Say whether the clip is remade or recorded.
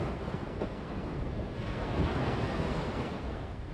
remade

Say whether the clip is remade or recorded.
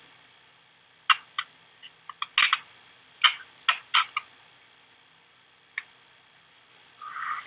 recorded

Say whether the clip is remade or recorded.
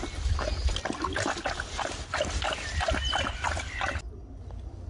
recorded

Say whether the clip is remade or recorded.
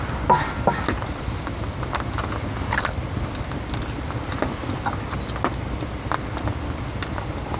recorded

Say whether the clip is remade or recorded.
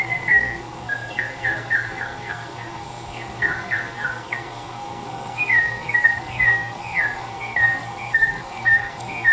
remade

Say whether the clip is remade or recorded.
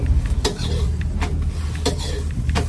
recorded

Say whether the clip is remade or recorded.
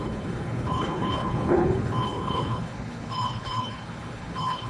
remade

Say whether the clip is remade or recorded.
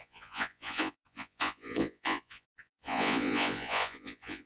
remade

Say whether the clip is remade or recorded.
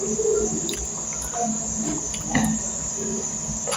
recorded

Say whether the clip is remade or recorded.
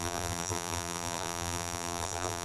remade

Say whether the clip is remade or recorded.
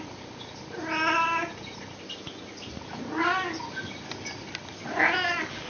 recorded